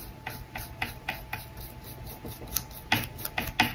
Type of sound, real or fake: real